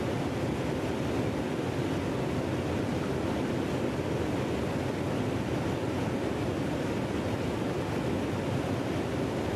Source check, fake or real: real